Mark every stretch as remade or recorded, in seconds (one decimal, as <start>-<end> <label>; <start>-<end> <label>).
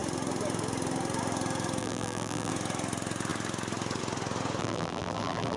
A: 0.0-1.8 recorded; 1.8-2.5 remade; 2.5-4.6 recorded; 4.6-5.6 remade